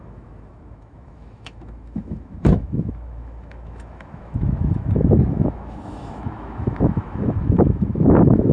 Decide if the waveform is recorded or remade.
remade